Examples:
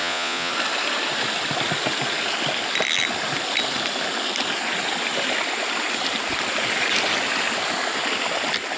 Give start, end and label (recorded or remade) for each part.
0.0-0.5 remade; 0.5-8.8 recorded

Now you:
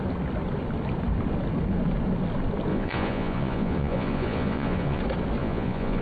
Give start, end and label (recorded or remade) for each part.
0.0-2.7 recorded; 2.7-5.0 remade; 5.0-5.4 recorded; 5.4-6.0 remade

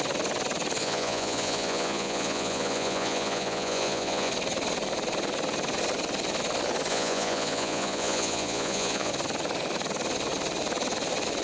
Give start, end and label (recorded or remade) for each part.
0.0-0.8 recorded; 0.8-4.3 remade; 4.3-6.9 recorded; 6.9-9.1 remade; 9.1-11.4 recorded